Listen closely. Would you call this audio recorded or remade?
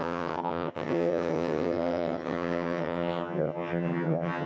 remade